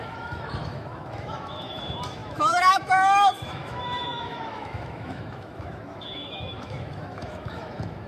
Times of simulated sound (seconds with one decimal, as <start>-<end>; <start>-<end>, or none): 0.0-8.1